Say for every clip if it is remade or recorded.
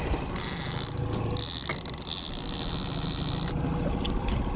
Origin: recorded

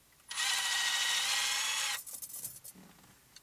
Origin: recorded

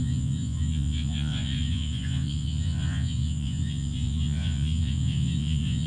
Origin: remade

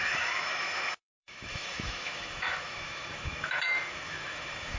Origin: remade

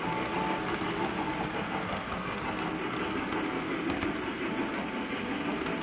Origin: recorded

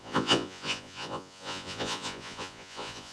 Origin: remade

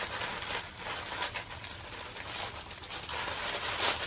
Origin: recorded